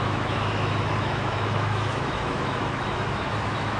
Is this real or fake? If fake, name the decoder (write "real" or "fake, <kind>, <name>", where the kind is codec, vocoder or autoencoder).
fake, autoencoder, DAC-VAE